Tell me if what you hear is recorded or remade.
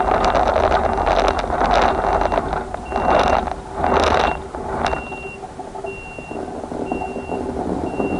recorded